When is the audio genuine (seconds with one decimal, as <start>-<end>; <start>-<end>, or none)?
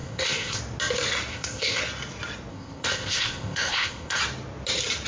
0.6-1.3; 1.8-2.5; 4.2-5.1